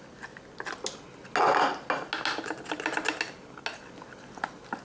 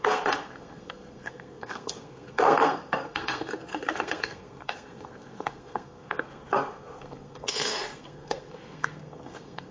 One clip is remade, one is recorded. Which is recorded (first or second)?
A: first